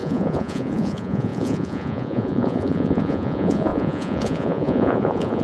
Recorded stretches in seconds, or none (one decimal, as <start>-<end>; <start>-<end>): none